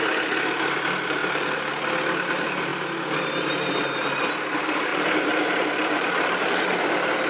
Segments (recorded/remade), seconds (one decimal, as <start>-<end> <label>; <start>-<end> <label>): 0.0-1.2 recorded; 1.2-1.7 remade; 1.7-4.9 recorded; 4.9-6.8 remade; 6.8-7.3 recorded